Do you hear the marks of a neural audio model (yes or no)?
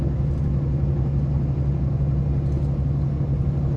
no